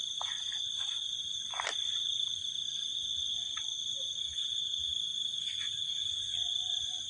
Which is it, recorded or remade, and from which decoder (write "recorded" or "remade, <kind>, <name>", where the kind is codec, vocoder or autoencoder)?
recorded